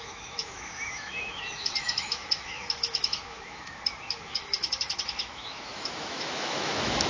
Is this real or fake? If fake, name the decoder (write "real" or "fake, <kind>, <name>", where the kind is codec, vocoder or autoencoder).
fake, autoencoder, DAC-VAE